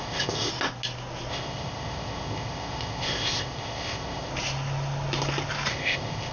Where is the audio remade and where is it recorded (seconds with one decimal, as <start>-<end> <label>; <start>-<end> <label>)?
0.0-0.5 remade; 0.5-1.3 recorded; 1.3-4.3 remade; 4.3-5.7 recorded; 5.7-6.3 remade